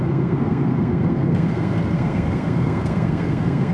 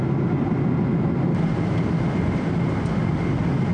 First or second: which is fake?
first